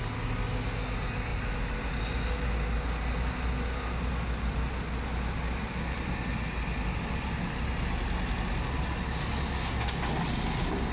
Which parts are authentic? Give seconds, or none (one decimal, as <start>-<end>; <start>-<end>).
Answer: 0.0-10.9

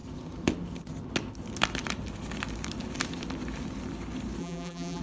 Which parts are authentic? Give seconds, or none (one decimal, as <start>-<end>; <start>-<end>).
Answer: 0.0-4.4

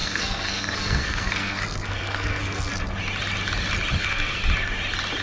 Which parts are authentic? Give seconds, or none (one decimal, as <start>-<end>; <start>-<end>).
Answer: 2.7-4.0; 4.4-5.2